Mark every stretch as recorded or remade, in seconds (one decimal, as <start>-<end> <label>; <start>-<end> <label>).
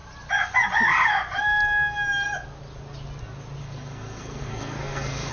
0.0-3.6 recorded; 3.6-5.3 remade